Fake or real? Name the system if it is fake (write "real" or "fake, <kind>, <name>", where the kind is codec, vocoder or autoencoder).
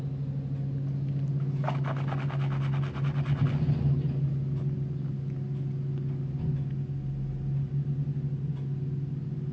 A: real